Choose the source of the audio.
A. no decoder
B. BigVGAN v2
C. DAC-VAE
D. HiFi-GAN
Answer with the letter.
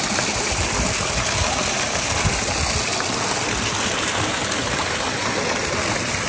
A